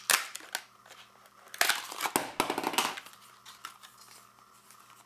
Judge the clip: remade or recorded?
recorded